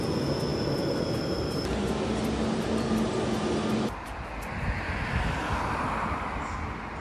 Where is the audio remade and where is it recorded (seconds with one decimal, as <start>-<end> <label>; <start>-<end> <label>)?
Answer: 0.0-7.0 recorded